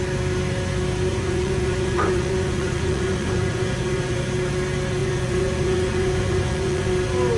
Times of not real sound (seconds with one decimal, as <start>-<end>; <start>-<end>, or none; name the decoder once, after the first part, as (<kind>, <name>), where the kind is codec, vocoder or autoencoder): 1.1-4.3 (vocoder, Vocos); 5.0-6.9